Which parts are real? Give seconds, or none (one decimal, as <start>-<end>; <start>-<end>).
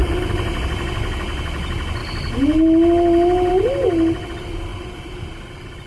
0.0-5.9